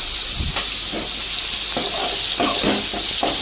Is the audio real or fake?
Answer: real